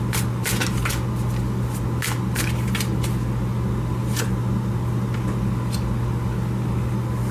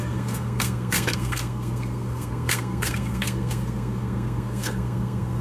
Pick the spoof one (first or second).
second